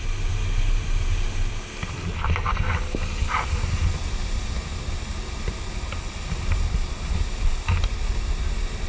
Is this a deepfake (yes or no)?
no